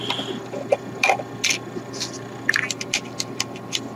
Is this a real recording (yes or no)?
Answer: yes